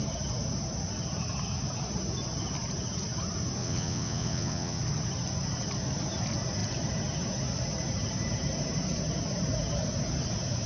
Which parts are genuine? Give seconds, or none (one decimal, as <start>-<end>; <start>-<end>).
0.0-3.6; 4.8-10.7